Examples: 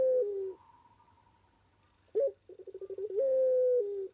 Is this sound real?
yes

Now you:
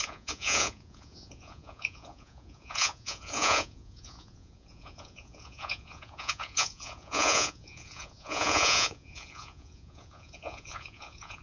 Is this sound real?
no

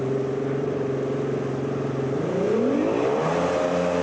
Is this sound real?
yes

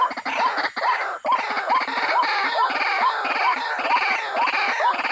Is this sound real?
yes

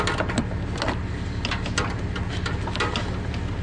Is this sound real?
yes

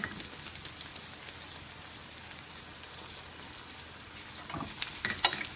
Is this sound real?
yes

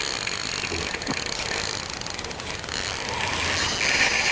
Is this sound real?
yes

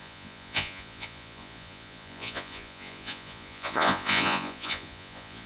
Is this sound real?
no